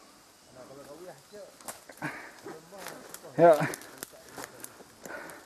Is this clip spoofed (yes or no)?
no